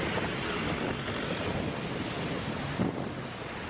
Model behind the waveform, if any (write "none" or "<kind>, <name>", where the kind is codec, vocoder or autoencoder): none